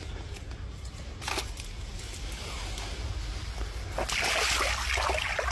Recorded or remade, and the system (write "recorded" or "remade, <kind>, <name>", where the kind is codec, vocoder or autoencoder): recorded